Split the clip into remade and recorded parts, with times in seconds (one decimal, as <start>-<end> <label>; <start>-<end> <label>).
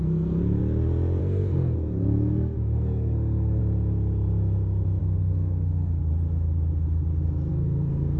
0.0-0.6 remade; 0.6-1.2 recorded; 1.2-3.6 remade; 3.6-5.0 recorded; 5.0-6.0 remade; 6.0-7.5 recorded; 7.5-8.2 remade